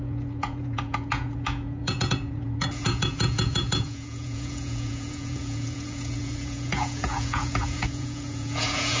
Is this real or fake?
fake